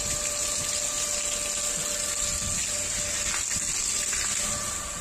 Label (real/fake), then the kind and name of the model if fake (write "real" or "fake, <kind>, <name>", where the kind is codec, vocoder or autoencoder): real